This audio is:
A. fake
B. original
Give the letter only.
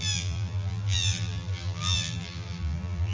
A